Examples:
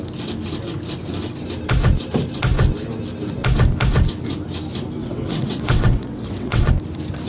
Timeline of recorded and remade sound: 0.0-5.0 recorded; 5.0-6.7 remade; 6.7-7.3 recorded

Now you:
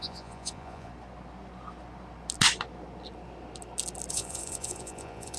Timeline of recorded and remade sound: 0.0-0.9 remade; 0.9-4.1 recorded; 4.1-5.4 remade

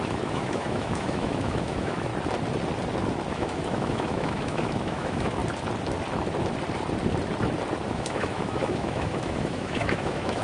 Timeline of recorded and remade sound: 0.0-2.1 remade; 2.1-3.3 recorded; 3.3-5.4 remade; 5.4-7.9 recorded; 7.9-10.4 remade

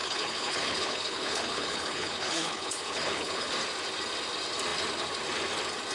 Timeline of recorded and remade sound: 0.0-3.5 remade; 3.5-5.9 recorded

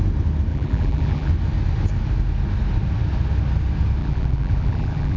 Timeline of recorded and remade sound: 0.0-0.5 recorded; 0.5-1.3 remade; 1.3-4.0 recorded; 4.0-5.2 remade

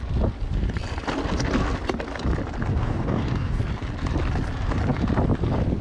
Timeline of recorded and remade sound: 0.0-2.7 recorded; 2.7-3.6 remade; 3.6-5.8 recorded

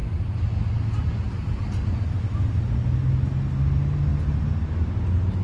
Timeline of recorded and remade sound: 0.0-5.4 recorded